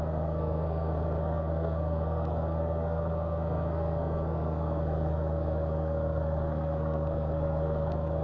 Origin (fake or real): fake